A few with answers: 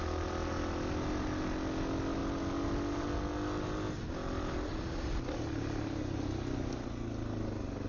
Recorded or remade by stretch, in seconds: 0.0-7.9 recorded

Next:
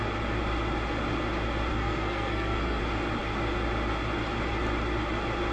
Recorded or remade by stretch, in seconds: 0.0-1.7 recorded; 1.7-2.8 remade; 2.8-5.5 recorded

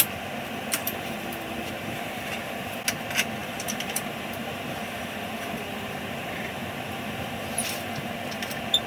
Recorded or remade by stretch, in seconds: 0.0-0.8 recorded; 0.8-2.8 remade; 2.8-3.4 recorded; 3.4-8.1 remade; 8.1-8.9 recorded

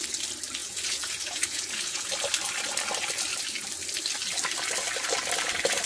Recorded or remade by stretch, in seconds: 0.0-0.6 recorded; 0.6-2.1 remade; 2.1-5.9 recorded

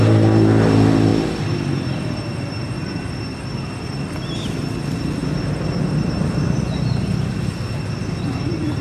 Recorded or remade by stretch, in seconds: 0.0-5.2 recorded; 5.2-5.7 remade; 5.7-8.8 recorded